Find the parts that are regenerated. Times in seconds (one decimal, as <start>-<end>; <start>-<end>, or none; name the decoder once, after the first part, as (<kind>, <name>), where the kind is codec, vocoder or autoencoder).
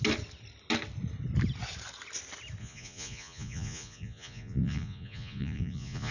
2.6-6.1 (vocoder, Vocos)